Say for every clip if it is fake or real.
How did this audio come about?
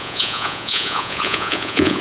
fake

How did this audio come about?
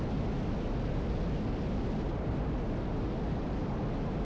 real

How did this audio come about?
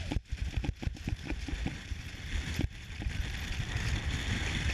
real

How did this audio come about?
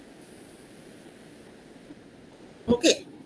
real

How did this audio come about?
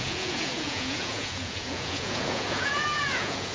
fake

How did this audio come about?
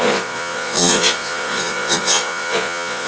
fake